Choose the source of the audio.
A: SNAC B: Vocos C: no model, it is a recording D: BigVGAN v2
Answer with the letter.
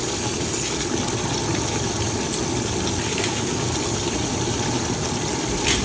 C